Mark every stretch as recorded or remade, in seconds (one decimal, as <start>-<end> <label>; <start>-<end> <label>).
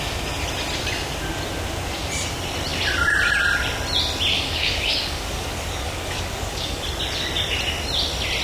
0.0-4.3 recorded; 4.3-6.8 remade; 6.8-8.4 recorded